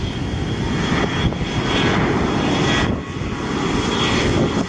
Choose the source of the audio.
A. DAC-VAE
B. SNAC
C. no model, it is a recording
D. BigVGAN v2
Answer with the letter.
C